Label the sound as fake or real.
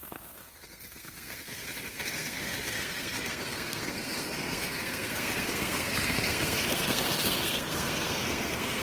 fake